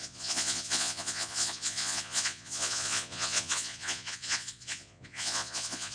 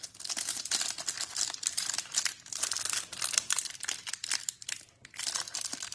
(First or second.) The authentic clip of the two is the second